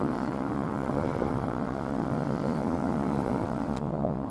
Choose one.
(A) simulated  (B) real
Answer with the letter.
A